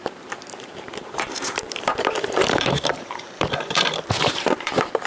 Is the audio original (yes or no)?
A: no